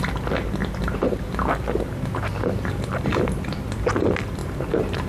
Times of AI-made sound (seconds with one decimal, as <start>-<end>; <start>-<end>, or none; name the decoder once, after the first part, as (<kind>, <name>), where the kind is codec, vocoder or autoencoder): 0.6-1.2 (vocoder, BigVGAN v2); 2.3-2.9; 4.4-5.1

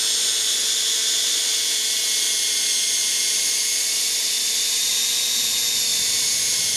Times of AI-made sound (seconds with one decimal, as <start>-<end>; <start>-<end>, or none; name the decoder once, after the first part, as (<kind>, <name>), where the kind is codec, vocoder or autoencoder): 3.0-5.1 (vocoder, BigVGAN v2); 5.9-6.8

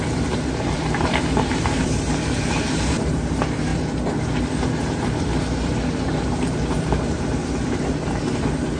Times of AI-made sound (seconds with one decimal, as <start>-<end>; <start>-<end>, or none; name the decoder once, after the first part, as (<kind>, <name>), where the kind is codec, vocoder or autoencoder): 0.0-3.7 (vocoder, BigVGAN v2); 5.4-8.8

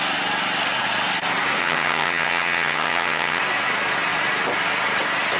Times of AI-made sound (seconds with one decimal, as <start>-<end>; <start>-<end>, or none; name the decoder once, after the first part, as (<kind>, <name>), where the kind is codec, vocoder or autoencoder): 1.6-3.4 (vocoder, HiFi-GAN)